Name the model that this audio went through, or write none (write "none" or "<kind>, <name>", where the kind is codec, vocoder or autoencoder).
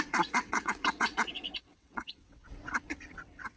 vocoder, WaveNeXt